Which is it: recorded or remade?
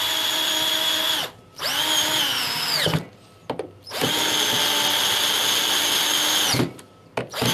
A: recorded